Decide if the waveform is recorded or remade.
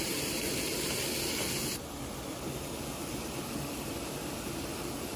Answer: remade